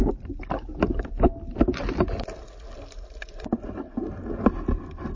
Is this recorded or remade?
recorded